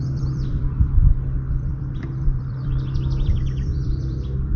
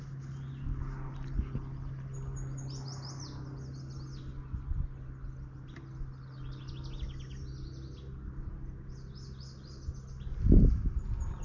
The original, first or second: second